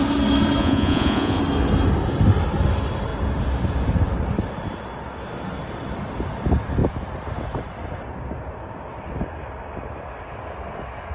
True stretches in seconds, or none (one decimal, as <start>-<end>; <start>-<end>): 0.0-0.6; 1.4-11.1